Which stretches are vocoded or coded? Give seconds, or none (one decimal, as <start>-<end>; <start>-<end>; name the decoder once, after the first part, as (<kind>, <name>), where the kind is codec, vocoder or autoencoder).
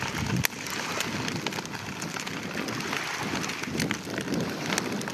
none